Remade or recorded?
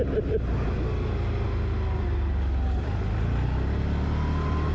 recorded